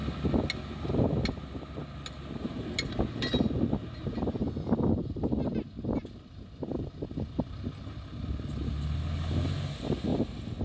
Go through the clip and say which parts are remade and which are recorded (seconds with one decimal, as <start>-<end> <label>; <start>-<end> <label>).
0.0-4.4 recorded; 4.4-7.0 remade; 7.0-10.1 recorded; 10.1-10.6 remade